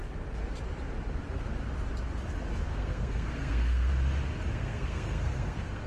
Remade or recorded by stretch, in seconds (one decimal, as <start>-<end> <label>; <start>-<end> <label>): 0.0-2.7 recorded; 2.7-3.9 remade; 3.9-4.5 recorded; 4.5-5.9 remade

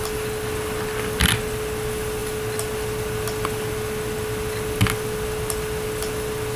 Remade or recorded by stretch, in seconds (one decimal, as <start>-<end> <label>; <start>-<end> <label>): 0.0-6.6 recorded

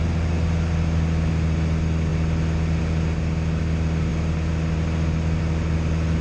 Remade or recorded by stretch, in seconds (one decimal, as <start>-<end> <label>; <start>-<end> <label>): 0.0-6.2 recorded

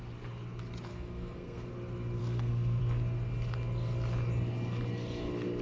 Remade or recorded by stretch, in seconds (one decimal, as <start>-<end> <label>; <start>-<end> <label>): 0.0-0.9 recorded; 0.9-1.7 remade; 1.7-2.2 recorded; 2.2-2.8 remade; 2.8-5.6 recorded

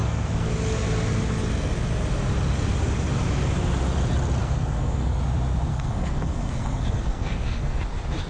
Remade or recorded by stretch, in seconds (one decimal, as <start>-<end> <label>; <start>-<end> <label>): 0.0-0.5 remade; 0.5-4.4 recorded; 4.4-5.2 remade; 5.2-5.7 recorded; 5.7-7.8 remade; 7.8-8.3 recorded